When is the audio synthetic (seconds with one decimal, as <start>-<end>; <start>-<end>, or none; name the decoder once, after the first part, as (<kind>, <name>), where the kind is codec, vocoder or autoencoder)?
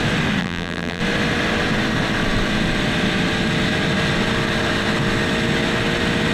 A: 0.4-1.0 (vocoder, BigVGAN v2)